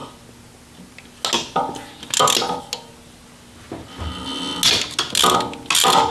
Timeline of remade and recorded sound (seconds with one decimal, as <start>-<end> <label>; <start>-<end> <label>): 0.0-6.1 recorded